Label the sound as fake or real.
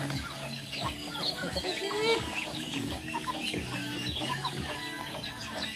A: fake